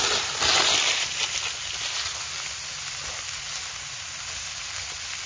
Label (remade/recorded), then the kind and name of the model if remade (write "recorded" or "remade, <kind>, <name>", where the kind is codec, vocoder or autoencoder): recorded